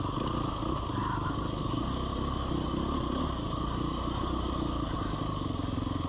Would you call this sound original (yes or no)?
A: yes